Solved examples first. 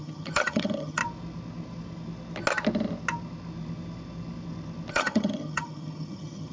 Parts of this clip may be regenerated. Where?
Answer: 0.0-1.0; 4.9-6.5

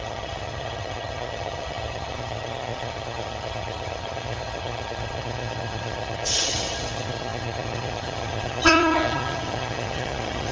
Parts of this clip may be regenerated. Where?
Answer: 0.0-10.5

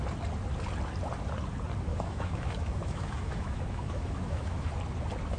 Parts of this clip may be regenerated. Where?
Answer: 1.9-4.7

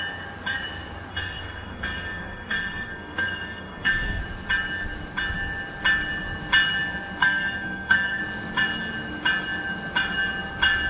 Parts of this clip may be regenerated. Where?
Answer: 1.1-4.2; 7.2-8.2